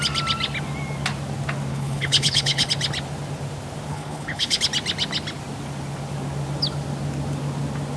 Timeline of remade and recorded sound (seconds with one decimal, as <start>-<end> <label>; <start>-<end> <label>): 0.0-1.7 recorded; 1.7-2.7 remade; 2.7-3.9 recorded; 3.9-4.6 remade; 4.6-8.0 recorded